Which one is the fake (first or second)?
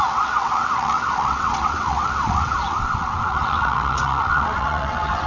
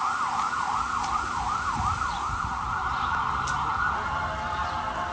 first